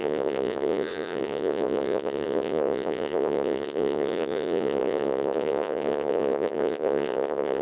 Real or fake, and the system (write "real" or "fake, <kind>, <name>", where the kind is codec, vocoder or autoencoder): fake, vocoder, Vocos